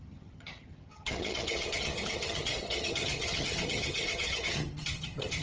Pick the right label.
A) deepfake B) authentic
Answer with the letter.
A